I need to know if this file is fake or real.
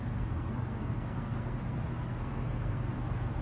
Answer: fake